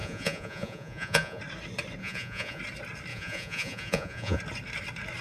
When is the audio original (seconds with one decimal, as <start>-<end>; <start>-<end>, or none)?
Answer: 1.4-2.0; 2.6-3.1; 4.4-5.2